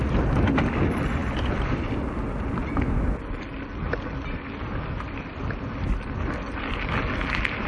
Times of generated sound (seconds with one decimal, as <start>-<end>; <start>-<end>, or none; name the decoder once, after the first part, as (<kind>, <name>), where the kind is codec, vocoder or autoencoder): none